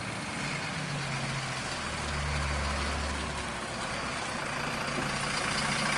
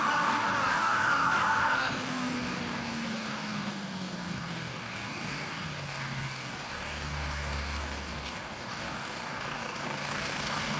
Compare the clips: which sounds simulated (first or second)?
second